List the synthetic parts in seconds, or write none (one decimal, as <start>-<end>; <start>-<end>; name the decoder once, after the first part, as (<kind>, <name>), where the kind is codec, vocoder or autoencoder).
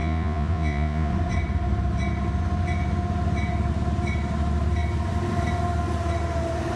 0.0-1.1 (vocoder, Vocos)